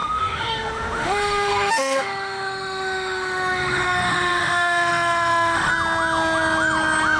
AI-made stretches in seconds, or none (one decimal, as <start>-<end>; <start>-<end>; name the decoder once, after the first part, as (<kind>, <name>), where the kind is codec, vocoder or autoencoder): 0.0-5.7 (autoencoder, DAC-VAE)

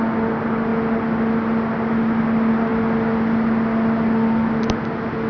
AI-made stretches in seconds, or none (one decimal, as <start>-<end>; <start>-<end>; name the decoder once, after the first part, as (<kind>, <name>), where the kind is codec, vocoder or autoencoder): none

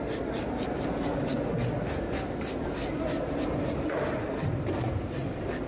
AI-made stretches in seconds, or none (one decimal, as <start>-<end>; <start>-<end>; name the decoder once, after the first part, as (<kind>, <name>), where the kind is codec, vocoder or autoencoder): none

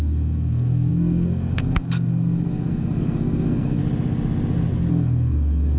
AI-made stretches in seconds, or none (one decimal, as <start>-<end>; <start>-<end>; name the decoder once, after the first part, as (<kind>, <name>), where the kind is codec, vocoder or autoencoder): 0.0-3.8 (codec, SNAC); 4.9-5.8

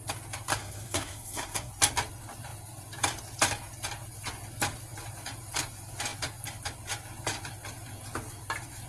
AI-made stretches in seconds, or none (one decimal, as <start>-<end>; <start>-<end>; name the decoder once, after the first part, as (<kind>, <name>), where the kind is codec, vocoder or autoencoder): 0.5-1.7 (codec, SNAC)

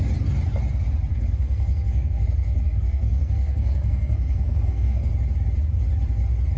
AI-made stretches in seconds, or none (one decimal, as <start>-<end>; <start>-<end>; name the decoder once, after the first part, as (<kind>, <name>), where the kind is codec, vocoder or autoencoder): 1.1-5.1 (codec, SNAC)

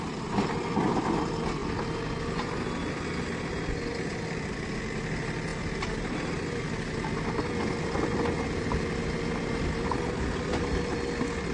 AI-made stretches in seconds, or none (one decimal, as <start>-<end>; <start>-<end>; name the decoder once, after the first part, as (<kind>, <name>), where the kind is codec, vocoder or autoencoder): none